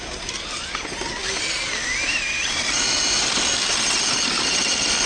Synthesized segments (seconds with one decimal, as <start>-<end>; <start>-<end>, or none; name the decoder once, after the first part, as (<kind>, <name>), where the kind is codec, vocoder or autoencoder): none